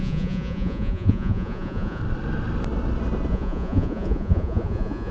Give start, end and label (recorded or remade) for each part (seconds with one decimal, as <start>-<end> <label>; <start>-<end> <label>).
0.0-2.0 remade; 2.0-3.3 recorded; 3.3-5.1 remade